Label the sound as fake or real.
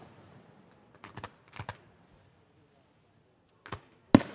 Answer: real